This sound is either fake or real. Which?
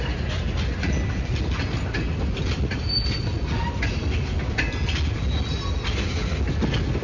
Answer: real